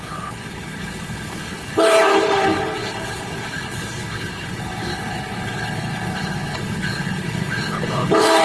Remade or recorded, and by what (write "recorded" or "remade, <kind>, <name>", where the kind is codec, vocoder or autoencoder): remade, codec, HILCodec